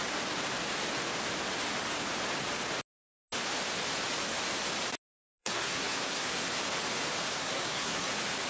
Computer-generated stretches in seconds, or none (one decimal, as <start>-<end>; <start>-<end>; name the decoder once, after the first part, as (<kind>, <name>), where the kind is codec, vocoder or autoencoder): 5.4-6.4 (codec, SNAC); 7.3-8.1